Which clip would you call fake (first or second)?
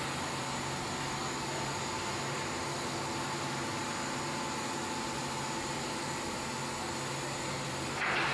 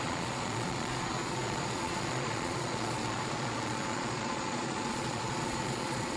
second